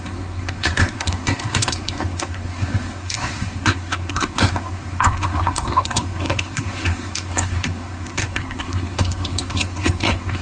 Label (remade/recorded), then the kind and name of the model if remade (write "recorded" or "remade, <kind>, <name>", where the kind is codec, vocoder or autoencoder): remade, codec, SNAC